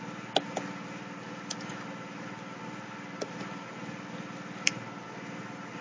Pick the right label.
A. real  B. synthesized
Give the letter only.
A